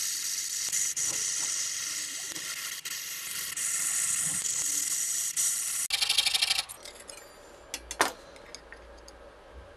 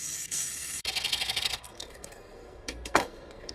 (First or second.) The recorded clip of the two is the first